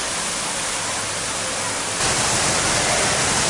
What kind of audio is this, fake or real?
real